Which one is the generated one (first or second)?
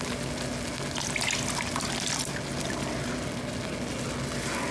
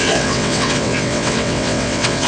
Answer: second